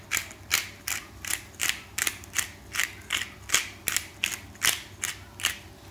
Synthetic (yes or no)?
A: no